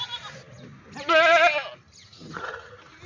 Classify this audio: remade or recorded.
recorded